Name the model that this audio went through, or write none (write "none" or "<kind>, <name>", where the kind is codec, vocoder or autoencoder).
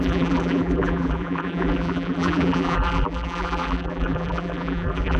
vocoder, BigVGAN v2